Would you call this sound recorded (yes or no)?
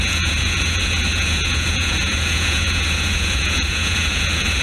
no